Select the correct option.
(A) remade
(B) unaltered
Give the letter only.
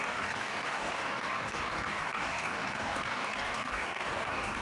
A